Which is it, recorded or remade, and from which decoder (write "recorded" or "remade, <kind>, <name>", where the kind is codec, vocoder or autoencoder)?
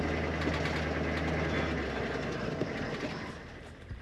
recorded